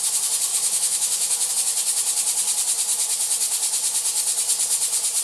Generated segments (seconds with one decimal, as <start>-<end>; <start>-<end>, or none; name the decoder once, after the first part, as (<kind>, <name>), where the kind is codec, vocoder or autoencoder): 0.5-1.5 (autoencoder, DAC-VAE)